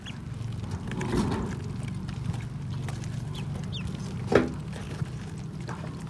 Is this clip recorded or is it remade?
recorded